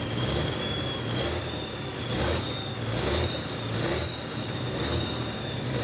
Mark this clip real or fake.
fake